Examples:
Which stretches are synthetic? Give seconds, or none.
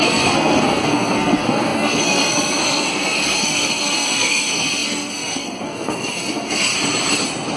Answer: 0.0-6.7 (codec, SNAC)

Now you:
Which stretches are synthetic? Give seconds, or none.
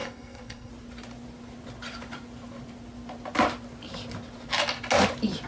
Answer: 0.0-0.7 (codec, SNAC)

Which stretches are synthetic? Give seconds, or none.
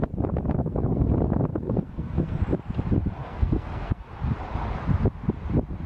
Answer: 0.6-1.1 (codec, SNAC); 1.5-2.4; 3.2-4.1